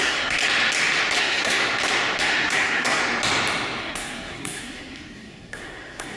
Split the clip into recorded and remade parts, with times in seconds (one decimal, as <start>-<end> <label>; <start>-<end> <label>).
0.0-0.4 remade; 0.4-1.2 recorded; 1.2-1.6 remade; 1.6-2.2 recorded; 2.2-3.0 remade; 3.0-3.8 recorded; 3.8-6.2 remade